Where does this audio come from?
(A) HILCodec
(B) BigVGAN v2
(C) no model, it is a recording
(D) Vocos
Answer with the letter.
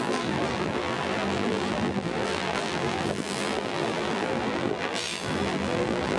B